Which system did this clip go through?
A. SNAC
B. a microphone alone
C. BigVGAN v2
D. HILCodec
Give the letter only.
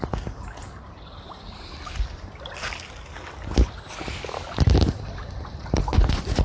B